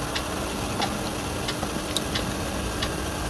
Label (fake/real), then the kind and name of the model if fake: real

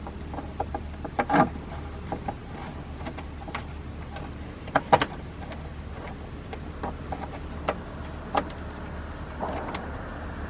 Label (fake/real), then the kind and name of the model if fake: real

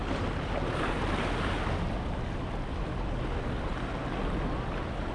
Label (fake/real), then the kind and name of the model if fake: real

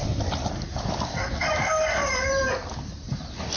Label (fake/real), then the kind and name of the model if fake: fake, vocoder, BigVGAN v2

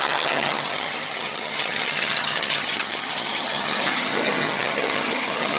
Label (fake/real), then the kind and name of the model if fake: fake, vocoder, HiFi-GAN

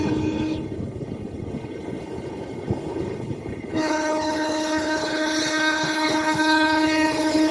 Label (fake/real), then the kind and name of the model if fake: fake, codec, HILCodec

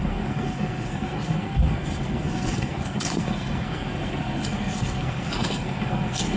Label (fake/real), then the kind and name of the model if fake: fake, codec, SNAC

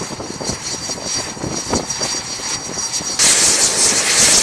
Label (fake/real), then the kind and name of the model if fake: real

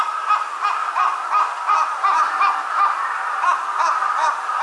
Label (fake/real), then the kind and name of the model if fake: real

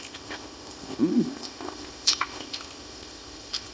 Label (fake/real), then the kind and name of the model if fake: fake, codec, ZipCodec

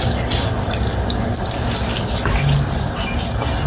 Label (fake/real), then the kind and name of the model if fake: real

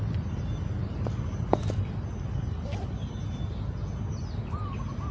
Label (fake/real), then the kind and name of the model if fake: real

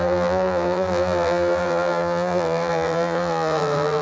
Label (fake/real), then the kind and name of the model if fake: fake, vocoder, BigVGAN v2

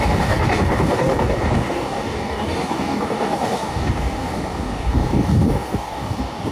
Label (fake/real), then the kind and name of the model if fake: fake, codec, DAC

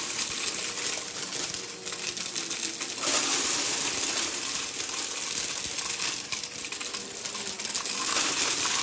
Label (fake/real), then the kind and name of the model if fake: real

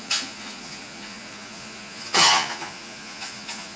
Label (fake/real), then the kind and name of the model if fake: fake, vocoder, Vocos